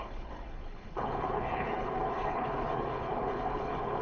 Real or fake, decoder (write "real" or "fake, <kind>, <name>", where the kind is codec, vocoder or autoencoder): fake, codec, HILCodec